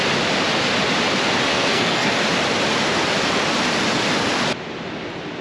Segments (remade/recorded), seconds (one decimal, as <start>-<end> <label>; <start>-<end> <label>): 0.0-1.5 recorded; 1.5-2.1 remade; 2.1-5.4 recorded